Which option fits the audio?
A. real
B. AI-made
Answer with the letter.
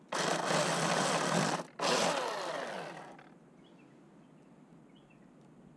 A